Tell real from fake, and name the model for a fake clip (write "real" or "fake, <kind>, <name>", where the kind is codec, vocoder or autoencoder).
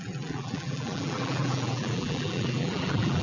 fake, vocoder, BigVGAN v2